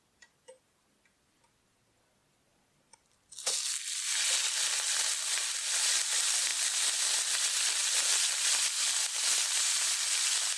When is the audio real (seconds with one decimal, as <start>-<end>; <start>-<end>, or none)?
0.0-10.6